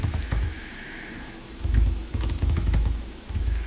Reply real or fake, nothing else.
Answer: fake